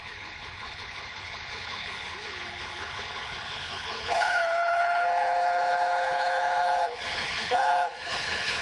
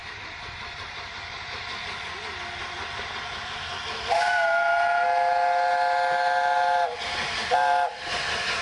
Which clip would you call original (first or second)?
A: second